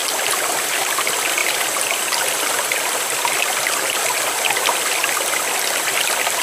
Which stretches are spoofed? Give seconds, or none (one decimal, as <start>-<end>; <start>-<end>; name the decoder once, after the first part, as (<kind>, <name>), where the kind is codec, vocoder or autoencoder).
1.4-2.2 (vocoder, BigVGAN v2)